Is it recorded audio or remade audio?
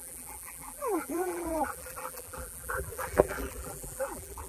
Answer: remade